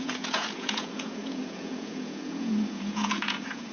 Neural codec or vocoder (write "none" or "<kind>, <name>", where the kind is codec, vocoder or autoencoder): vocoder, Vocos